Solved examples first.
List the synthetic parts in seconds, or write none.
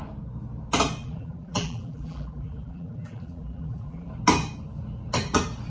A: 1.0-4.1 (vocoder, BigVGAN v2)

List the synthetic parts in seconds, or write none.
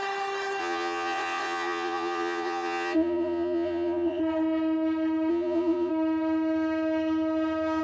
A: 0.6-4.2 (vocoder, Vocos); 5.3-5.9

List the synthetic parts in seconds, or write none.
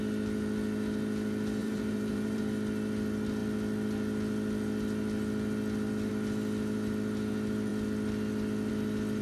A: 1.6-2.4 (vocoder, BigVGAN v2)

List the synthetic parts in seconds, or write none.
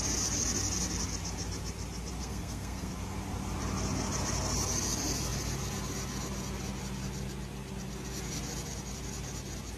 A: 2.2-2.9 (codec, SNAC)